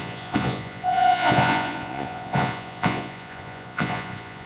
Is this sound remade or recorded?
remade